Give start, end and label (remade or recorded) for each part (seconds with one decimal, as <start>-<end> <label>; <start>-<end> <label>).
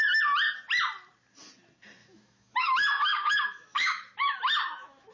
0.0-2.0 recorded; 2.0-5.1 remade